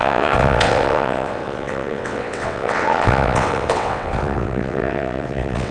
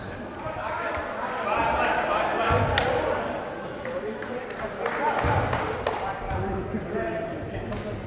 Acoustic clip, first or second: second